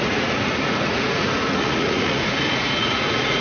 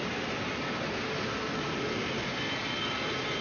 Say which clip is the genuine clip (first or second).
second